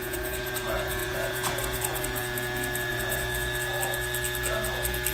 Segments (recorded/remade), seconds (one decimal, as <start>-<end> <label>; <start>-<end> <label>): 0.0-2.2 remade; 2.2-2.9 recorded; 2.9-3.3 remade; 3.3-5.1 recorded